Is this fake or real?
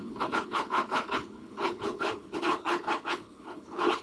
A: fake